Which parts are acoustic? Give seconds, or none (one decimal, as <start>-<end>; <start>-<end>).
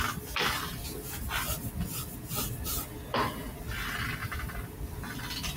0.0-4.2; 4.9-5.6